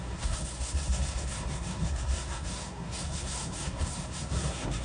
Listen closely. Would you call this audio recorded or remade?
remade